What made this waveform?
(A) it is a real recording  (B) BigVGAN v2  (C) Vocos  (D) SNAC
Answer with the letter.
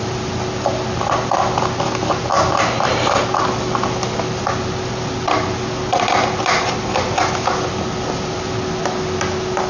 A